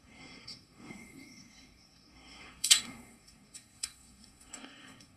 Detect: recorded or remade remade